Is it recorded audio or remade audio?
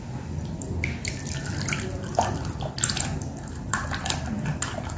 recorded